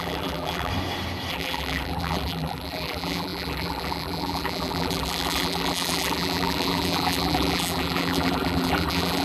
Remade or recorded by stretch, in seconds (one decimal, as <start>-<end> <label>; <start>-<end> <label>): 0.0-0.7 remade; 0.7-1.3 recorded; 1.3-9.2 remade

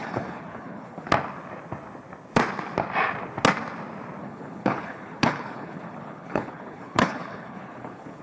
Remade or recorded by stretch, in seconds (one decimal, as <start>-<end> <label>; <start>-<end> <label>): 0.0-1.1 remade; 1.1-4.2 recorded; 4.2-8.2 remade

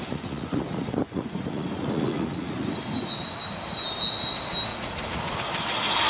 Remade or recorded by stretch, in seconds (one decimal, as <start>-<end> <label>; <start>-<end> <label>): 0.0-2.8 remade; 2.8-4.7 recorded; 4.7-5.3 remade; 5.3-6.1 recorded

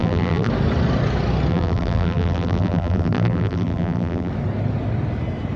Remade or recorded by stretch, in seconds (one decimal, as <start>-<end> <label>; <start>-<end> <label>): 0.0-0.5 remade; 0.5-1.5 recorded; 1.5-4.3 remade; 4.3-5.6 recorded